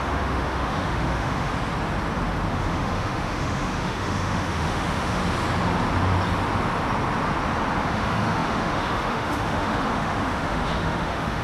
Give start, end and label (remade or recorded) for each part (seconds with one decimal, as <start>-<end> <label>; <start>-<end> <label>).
0.0-1.5 remade; 1.5-2.5 recorded; 2.5-5.2 remade; 5.2-7.8 recorded; 7.8-11.4 remade